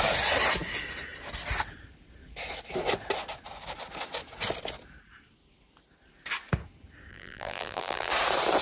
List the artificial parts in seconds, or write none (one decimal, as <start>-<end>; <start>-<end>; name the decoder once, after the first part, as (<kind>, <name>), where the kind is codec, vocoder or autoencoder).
7.1-8.1 (vocoder, BigVGAN v2)